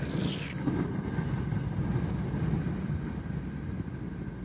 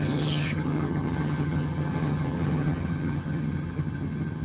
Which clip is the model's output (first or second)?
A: second